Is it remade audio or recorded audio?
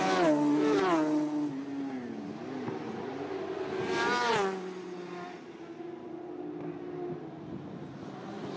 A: recorded